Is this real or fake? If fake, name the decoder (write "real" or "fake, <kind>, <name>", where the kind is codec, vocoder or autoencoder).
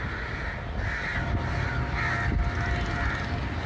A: real